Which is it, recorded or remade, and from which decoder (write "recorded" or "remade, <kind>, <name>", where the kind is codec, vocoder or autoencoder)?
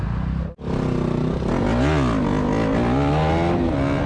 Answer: recorded